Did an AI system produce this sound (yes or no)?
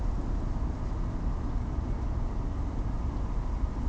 no